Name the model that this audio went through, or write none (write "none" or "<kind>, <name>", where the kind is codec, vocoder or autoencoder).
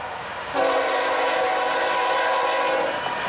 none